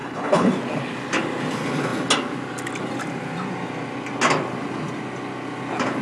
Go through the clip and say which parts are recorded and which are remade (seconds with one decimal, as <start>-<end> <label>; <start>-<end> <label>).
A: 0.0-0.5 remade; 0.5-6.0 recorded